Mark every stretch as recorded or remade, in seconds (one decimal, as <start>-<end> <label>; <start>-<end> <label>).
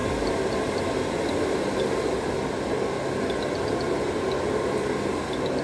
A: 0.0-5.6 recorded